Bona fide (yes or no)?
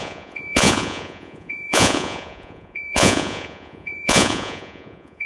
no